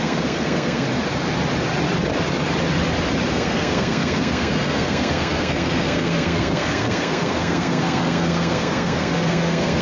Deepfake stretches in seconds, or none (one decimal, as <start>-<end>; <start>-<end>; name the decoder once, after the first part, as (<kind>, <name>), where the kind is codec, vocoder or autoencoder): 0.0-0.9 (codec, SNAC); 3.3-9.8